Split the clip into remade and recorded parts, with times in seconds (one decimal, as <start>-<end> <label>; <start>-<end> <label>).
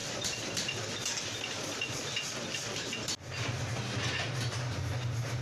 0.0-1.9 remade; 1.9-5.4 recorded